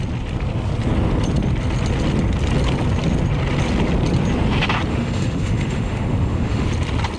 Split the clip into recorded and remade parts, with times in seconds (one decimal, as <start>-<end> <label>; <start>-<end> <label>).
0.0-4.9 recorded; 4.9-6.7 remade; 6.7-7.2 recorded